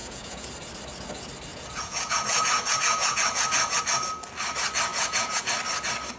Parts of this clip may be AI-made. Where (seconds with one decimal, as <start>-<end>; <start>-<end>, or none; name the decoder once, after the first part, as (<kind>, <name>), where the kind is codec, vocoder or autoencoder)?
0.0-0.5 (vocoder, Vocos); 1.5-3.8; 4.9-5.4